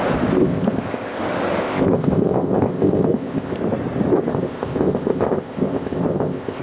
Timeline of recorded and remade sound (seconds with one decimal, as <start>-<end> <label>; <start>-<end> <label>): 0.0-0.4 recorded; 0.4-1.2 remade; 1.2-1.6 recorded; 1.6-3.6 remade; 3.6-4.3 recorded; 4.3-6.6 remade